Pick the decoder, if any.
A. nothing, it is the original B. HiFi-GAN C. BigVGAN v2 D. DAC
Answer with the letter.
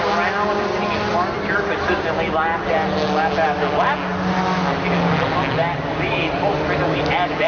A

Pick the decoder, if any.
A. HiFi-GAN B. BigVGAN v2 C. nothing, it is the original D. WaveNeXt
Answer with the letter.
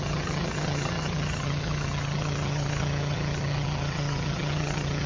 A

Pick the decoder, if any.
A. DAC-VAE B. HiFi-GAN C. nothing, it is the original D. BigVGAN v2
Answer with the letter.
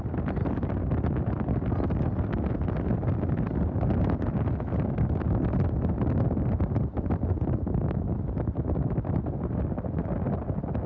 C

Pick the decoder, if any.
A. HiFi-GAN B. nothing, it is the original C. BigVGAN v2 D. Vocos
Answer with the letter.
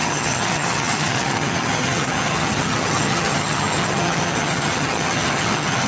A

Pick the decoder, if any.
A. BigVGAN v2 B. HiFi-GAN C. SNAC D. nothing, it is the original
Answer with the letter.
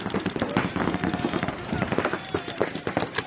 D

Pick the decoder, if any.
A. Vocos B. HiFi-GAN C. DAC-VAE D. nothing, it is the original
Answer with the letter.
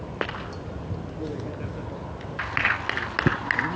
D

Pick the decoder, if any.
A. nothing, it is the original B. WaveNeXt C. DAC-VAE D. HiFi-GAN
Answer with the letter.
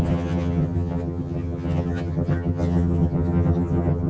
D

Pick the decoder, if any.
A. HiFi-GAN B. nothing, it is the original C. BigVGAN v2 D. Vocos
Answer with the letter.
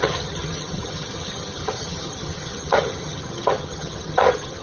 A